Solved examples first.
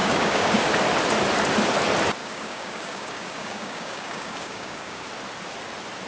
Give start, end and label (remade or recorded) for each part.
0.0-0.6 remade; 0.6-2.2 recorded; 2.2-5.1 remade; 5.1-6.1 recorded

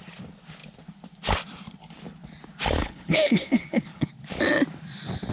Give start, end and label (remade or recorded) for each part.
0.0-2.8 recorded; 2.8-4.1 remade; 4.1-5.3 recorded

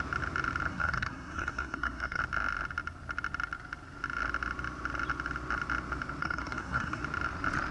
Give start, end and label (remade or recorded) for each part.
0.0-0.7 recorded; 0.7-2.2 remade; 2.2-6.2 recorded; 6.2-7.0 remade; 7.0-7.7 recorded

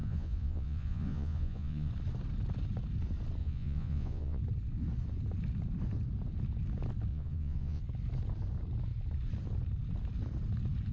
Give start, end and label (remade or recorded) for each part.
0.0-1.9 remade; 1.9-3.4 recorded; 3.4-4.4 remade; 4.4-7.1 recorded; 7.1-7.8 remade; 7.8-10.9 recorded